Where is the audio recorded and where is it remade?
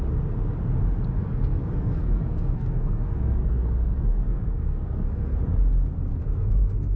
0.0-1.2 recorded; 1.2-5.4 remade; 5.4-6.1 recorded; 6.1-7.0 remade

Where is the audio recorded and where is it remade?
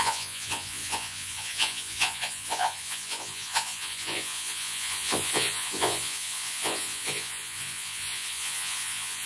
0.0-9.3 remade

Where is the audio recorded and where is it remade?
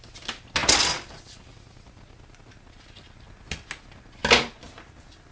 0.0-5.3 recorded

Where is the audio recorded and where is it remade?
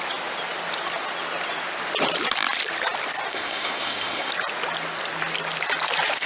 0.0-3.3 recorded; 3.3-4.3 remade; 4.3-6.3 recorded